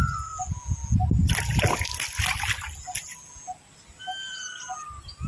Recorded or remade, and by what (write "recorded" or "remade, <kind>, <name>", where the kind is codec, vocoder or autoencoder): recorded